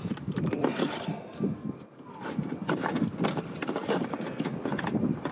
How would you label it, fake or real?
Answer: real